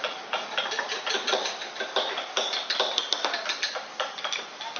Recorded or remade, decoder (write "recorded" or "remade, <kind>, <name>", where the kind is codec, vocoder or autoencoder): recorded